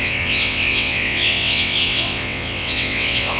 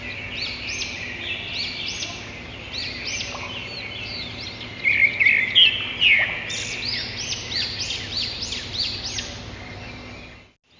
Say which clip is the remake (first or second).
first